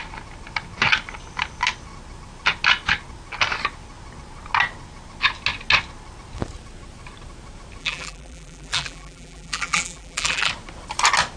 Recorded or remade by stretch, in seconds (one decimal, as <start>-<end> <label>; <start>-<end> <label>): 0.0-7.8 recorded; 7.8-10.5 remade; 10.5-11.4 recorded